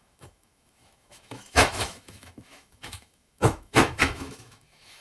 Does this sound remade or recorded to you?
remade